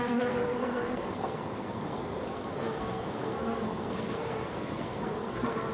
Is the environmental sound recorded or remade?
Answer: remade